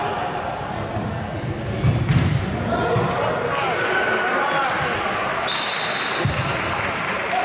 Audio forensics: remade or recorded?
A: recorded